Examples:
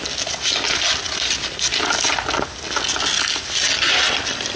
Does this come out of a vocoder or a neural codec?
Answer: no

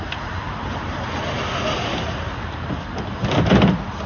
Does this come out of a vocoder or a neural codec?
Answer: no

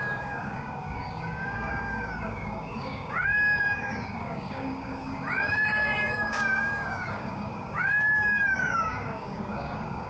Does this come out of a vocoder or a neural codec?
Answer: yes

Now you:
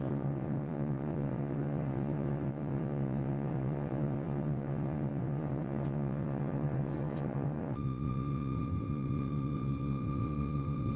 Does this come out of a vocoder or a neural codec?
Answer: yes